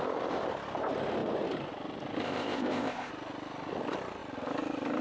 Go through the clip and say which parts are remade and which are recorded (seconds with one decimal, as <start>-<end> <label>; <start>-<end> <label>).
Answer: 0.0-2.2 recorded; 2.2-3.1 remade; 3.1-5.0 recorded

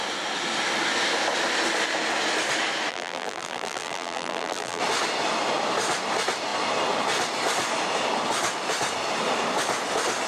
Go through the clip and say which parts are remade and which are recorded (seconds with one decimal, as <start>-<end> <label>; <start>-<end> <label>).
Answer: 0.0-2.9 recorded; 2.9-4.8 remade; 4.8-10.3 recorded

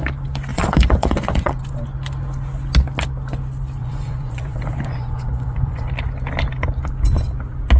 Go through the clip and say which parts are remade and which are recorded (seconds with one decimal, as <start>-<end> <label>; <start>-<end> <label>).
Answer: 0.0-0.5 recorded; 0.5-1.6 remade; 1.6-3.8 recorded; 3.8-5.9 remade; 5.9-7.8 recorded